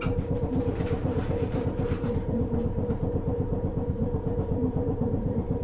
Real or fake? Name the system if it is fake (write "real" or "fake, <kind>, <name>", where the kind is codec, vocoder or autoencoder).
fake, vocoder, BigVGAN v2